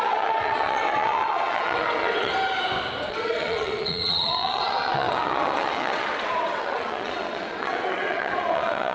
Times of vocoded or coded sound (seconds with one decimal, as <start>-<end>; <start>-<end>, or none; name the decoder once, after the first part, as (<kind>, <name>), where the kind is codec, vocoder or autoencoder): 0.0-2.3 (vocoder, WaveNeXt); 3.1-8.9